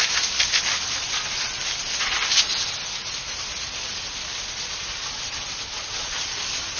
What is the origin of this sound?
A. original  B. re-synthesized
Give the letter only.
A